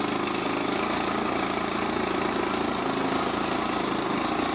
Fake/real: real